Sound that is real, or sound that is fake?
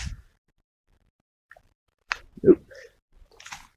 fake